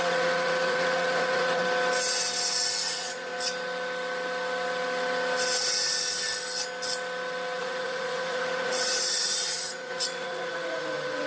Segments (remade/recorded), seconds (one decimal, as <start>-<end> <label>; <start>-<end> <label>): 0.0-1.6 remade; 1.6-2.8 recorded; 2.8-3.3 remade; 3.3-7.6 recorded; 7.6-11.3 remade